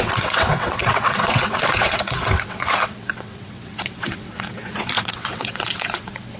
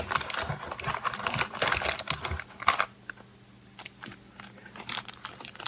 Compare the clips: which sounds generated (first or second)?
first